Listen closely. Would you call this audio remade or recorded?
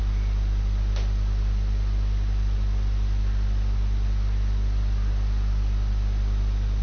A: recorded